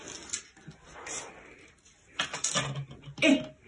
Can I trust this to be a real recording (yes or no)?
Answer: yes